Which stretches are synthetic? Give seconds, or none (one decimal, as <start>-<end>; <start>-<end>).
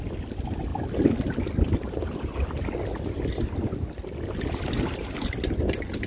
none